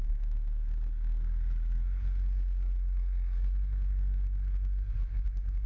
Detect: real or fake fake